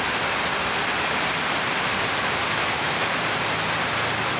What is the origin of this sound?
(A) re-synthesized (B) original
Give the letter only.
B